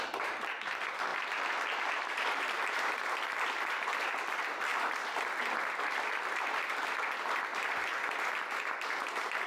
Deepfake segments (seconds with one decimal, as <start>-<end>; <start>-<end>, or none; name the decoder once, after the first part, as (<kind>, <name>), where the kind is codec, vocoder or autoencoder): 0.0-1.1 (vocoder, BigVGAN v2); 1.9-4.7; 5.9-7.5; 8.6-9.5